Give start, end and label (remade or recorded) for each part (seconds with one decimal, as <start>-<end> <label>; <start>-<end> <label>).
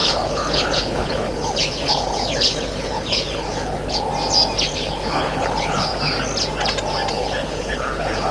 0.0-4.1 remade; 4.1-4.7 recorded; 4.7-5.9 remade; 5.9-7.1 recorded; 7.1-8.3 remade